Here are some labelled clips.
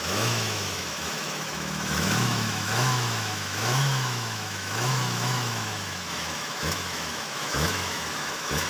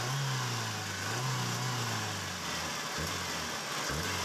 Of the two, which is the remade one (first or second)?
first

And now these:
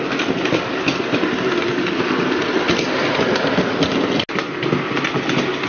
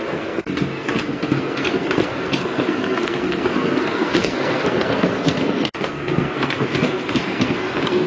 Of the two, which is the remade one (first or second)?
second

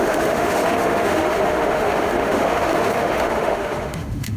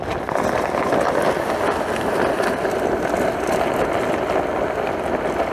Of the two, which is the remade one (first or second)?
first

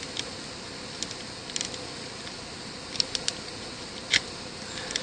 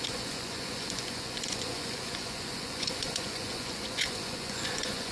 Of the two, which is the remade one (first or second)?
second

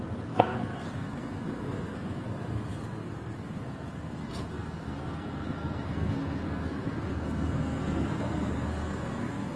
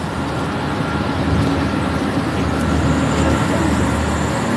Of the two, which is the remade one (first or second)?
first